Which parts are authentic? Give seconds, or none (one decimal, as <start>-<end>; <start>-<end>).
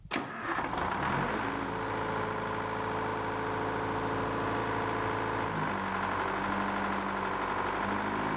0.0-8.4